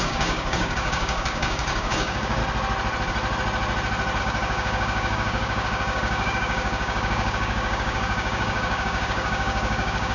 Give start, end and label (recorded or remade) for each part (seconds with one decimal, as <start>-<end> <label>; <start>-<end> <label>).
0.0-2.4 remade; 2.4-4.2 recorded; 4.2-10.1 remade